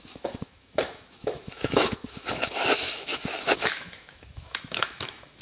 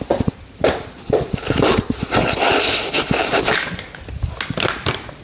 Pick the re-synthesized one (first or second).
first